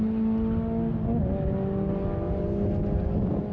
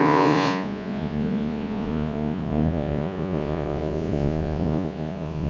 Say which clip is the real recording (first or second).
first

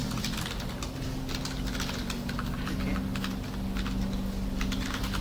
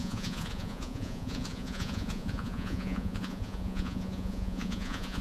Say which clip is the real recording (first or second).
first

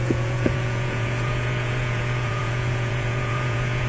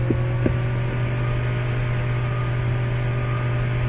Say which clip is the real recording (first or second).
second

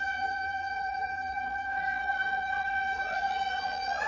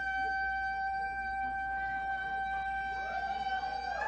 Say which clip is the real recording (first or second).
second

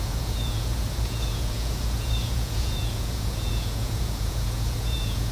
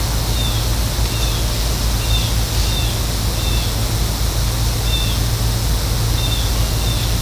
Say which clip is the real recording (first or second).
second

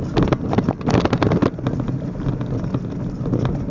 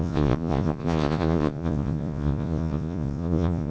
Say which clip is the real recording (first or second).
first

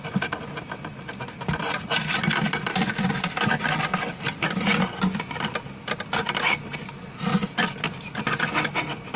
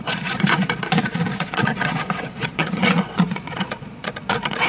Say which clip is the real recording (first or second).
first